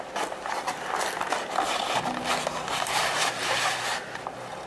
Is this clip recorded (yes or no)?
yes